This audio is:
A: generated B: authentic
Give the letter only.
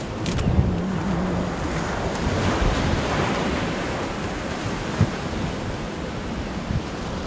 B